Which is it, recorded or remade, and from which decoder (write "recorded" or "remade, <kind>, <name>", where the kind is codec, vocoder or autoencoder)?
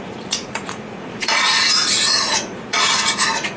remade, vocoder, Vocos